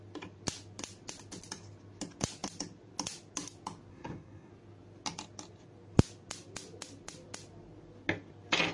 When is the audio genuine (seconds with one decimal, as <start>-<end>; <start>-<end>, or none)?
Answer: 0.0-3.9; 4.5-8.7